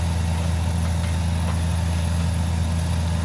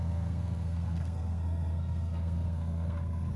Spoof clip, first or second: second